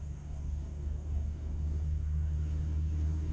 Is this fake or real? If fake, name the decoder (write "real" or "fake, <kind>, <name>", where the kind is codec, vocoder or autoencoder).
fake, codec, DAC